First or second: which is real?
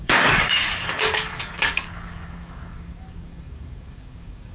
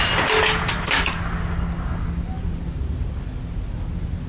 second